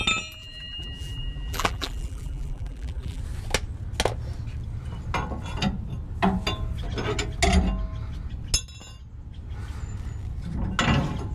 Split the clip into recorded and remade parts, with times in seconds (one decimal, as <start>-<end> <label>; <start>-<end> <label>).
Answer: 0.0-0.4 recorded; 0.4-3.2 remade; 3.2-11.3 recorded